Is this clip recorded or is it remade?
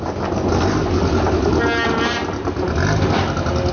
recorded